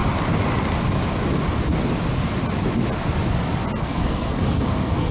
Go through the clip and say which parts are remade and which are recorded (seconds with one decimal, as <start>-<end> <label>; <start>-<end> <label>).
0.0-3.8 recorded; 3.8-5.1 remade